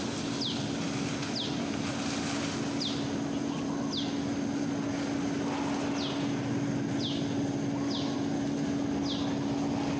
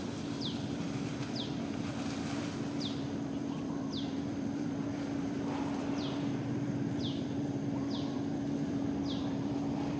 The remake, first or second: second